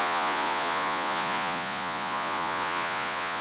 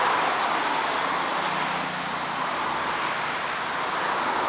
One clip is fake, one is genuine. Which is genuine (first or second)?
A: second